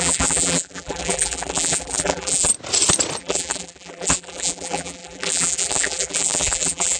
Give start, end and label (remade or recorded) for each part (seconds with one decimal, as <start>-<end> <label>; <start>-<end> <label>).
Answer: 0.0-2.5 remade; 2.5-3.2 recorded; 3.2-7.0 remade